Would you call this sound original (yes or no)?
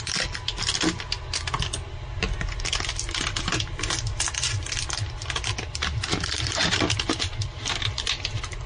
yes